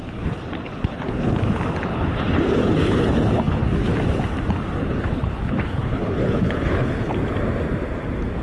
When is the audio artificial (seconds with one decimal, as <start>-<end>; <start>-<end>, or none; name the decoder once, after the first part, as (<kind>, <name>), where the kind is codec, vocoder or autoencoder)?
0.0-1.4 (codec, HILCodec); 1.9-3.9; 4.8-7.1